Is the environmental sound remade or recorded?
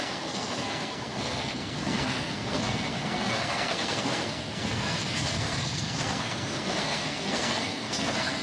remade